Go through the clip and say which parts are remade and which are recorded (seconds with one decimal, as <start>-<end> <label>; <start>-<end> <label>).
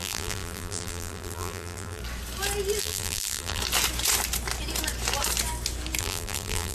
0.0-2.0 remade; 2.0-2.8 recorded; 2.8-3.6 remade; 3.6-6.0 recorded; 6.0-6.7 remade